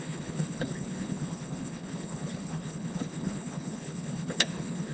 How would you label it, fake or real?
fake